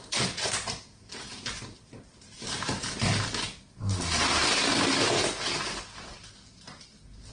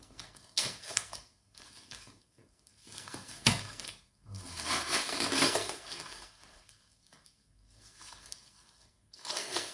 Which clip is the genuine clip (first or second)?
first